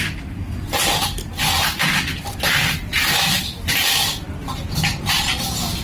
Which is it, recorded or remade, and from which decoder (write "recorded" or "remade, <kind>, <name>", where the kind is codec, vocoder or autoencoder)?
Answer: recorded